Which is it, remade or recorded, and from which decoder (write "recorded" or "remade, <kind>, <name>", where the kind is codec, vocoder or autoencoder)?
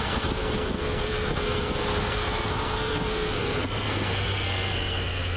remade, codec, SNAC